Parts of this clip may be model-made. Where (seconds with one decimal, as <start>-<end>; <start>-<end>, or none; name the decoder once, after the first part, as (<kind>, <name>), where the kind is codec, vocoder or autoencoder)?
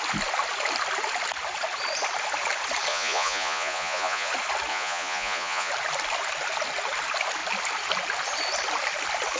2.9-4.3 (vocoder, Vocos); 4.7-5.7